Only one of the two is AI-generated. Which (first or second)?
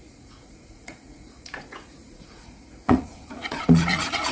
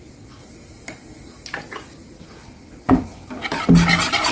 first